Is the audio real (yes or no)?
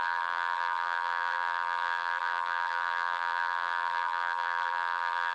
no